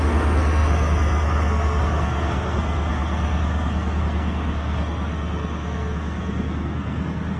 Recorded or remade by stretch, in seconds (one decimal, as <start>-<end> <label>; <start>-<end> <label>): 0.0-7.4 remade